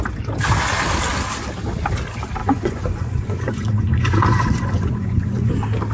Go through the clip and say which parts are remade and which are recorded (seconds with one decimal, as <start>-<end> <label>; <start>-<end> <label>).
0.0-2.4 recorded; 2.4-5.5 remade; 5.5-5.9 recorded